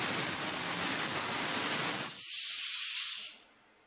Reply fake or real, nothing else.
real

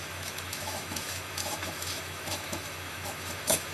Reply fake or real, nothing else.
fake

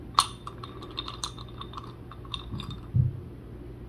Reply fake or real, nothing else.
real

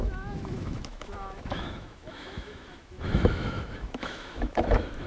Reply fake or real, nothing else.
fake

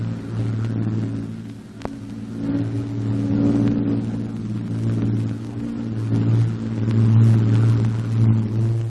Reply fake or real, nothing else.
real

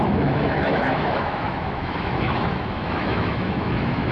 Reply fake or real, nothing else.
fake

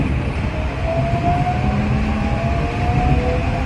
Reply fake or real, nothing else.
real